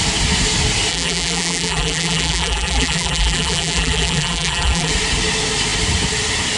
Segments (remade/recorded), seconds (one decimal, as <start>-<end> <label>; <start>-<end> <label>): 0.0-0.9 recorded; 0.9-4.9 remade; 4.9-6.6 recorded